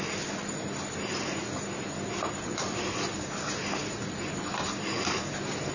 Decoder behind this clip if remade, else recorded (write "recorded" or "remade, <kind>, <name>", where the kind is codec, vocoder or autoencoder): recorded